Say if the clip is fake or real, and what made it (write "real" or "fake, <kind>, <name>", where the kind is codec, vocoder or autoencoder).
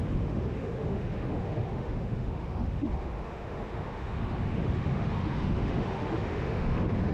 fake, autoencoder, DAC-VAE